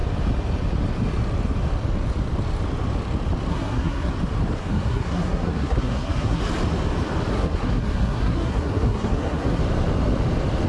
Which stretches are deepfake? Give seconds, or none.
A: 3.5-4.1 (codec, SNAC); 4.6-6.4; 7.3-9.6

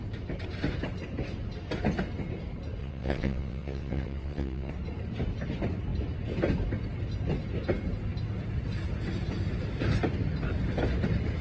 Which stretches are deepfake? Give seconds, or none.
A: 2.8-4.7 (vocoder, WaveNeXt)

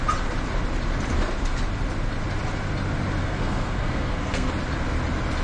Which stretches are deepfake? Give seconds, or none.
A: 3.2-4.5 (codec, SNAC)

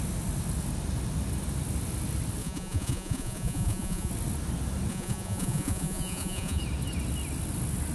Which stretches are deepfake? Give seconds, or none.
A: 2.4-4.1 (vocoder, Vocos); 4.9-6.6

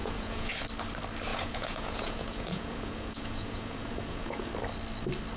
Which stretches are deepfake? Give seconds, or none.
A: 0.0-0.5 (vocoder, Vocos); 1.3-4.5

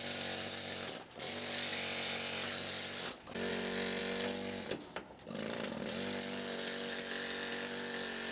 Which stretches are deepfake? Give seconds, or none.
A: none

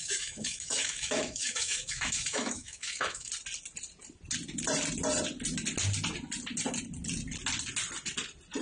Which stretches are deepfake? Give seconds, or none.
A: 0.0-3.3 (autoencoder, DAC-VAE)

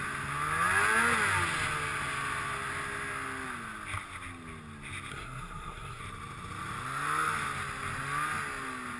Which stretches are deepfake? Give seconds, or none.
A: 5.1-6.0 (codec, SNAC)